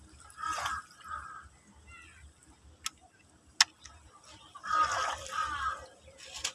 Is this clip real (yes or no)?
yes